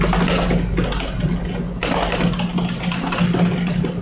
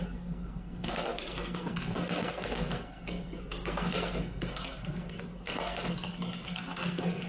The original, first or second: first